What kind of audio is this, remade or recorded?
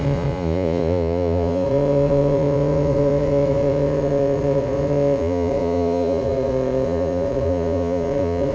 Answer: remade